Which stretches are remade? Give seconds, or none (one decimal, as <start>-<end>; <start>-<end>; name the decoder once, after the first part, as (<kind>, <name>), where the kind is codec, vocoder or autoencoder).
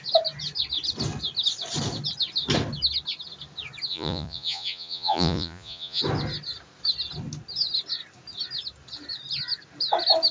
3.9-6.0 (vocoder, Vocos)